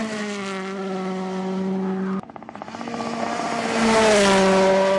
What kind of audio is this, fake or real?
real